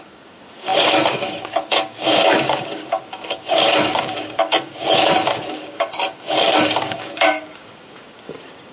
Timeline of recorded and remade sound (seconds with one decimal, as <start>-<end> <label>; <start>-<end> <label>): 0.0-8.7 remade